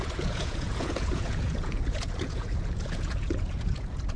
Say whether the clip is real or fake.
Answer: fake